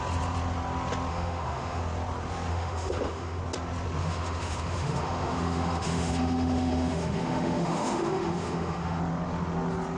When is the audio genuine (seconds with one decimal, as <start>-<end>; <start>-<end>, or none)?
0.0-1.1; 1.8-2.5; 3.4-4.0; 9.0-10.0